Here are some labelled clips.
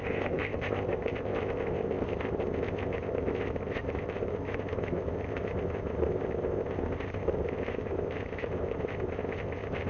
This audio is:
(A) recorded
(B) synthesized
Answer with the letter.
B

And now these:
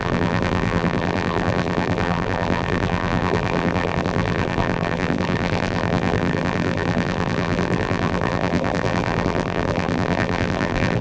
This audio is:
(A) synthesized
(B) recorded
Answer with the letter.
A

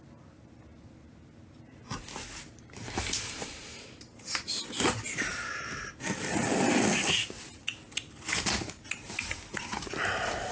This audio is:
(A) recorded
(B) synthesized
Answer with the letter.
A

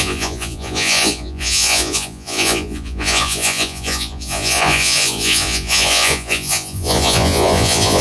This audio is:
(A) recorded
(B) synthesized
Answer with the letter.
B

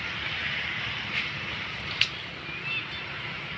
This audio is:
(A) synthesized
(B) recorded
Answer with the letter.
B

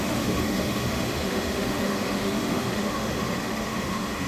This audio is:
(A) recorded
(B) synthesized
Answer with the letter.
B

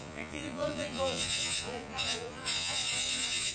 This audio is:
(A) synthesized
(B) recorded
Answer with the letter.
A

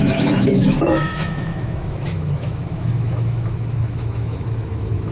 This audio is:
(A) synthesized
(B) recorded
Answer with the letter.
A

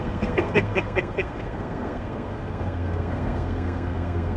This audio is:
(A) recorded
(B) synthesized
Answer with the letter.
B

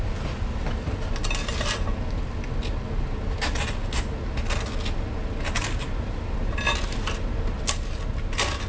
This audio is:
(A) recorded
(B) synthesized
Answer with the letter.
A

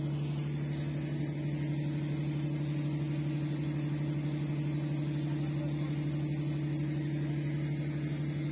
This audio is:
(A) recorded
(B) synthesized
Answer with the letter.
A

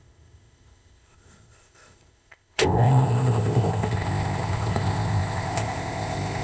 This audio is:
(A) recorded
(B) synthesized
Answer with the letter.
B